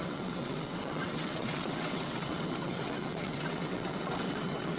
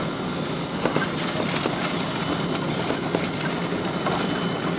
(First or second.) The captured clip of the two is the second